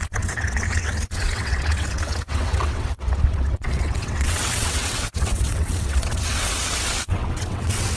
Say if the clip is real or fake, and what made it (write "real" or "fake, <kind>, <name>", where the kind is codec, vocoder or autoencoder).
fake, vocoder, WaveNeXt